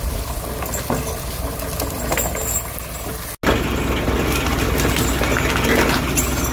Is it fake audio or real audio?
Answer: real